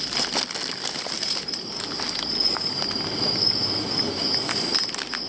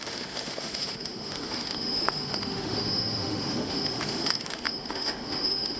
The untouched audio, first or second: first